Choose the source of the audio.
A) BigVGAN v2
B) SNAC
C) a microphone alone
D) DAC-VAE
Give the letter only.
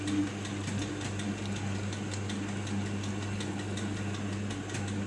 C